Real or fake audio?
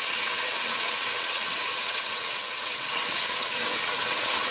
fake